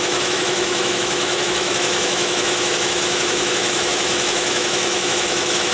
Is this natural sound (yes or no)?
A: no